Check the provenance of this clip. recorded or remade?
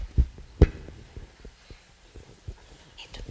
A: recorded